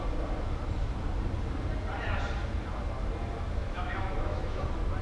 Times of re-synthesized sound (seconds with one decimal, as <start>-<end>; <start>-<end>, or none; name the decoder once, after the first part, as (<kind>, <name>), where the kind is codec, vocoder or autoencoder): 3.6-4.6 (autoencoder, DAC-VAE)